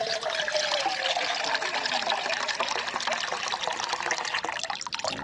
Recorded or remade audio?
recorded